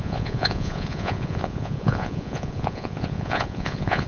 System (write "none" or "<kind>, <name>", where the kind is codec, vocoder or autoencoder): vocoder, Vocos